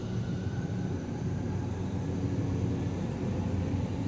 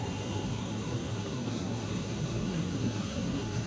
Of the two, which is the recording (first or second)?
first